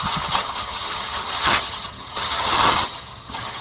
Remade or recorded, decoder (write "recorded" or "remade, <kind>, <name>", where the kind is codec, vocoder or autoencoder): remade, vocoder, HiFi-GAN